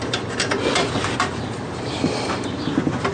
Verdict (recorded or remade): remade